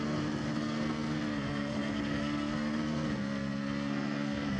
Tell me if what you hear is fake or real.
fake